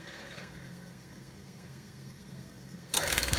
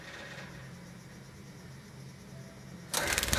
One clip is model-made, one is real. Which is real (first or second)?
second